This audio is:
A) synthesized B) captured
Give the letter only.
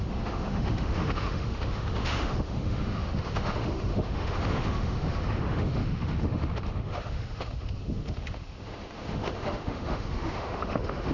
A